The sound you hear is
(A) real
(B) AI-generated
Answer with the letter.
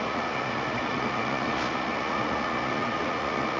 B